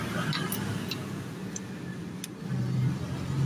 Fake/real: real